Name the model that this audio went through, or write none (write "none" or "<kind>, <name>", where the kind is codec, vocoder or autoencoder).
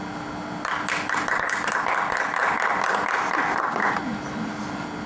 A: none